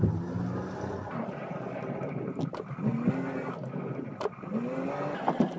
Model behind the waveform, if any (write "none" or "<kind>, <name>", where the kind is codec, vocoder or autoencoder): none